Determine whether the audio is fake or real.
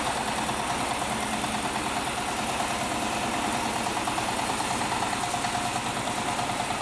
real